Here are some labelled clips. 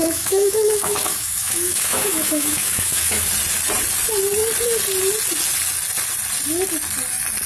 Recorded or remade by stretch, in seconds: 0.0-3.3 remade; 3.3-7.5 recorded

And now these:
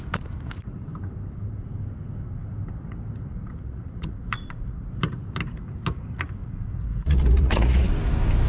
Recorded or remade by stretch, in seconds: 0.0-3.3 recorded; 3.3-4.9 remade; 4.9-6.4 recorded; 6.4-7.9 remade; 7.9-8.5 recorded

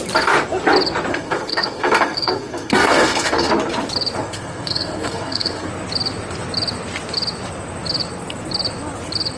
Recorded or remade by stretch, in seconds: 0.0-1.1 recorded; 1.1-3.5 remade; 3.5-4.2 recorded; 4.2-5.7 remade; 5.7-9.4 recorded

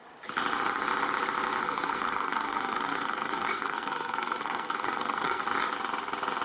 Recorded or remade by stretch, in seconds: 0.0-1.6 recorded; 1.6-5.4 remade; 5.4-6.4 recorded

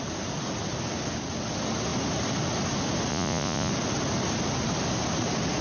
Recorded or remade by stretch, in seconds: 0.0-3.1 recorded; 3.1-3.7 remade; 3.7-5.6 recorded